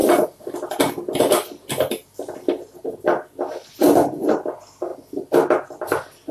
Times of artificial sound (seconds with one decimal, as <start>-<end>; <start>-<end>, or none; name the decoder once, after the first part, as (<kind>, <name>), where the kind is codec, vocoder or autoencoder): none